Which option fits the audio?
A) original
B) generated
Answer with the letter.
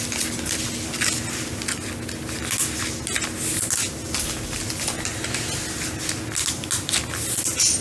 A